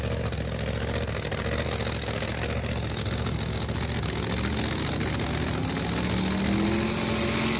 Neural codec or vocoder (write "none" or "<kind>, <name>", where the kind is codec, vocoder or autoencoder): none